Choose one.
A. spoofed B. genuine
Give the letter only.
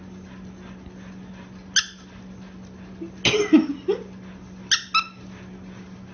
B